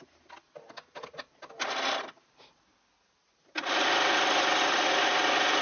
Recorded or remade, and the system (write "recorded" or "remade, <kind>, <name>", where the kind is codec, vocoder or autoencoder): recorded